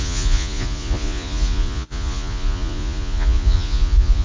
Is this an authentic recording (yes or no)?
no